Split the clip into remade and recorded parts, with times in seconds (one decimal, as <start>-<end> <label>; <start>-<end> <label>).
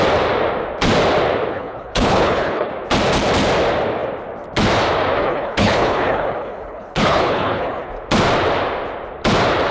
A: 0.0-1.5 recorded; 1.5-2.7 remade; 2.7-5.2 recorded; 5.2-7.9 remade; 7.9-9.7 recorded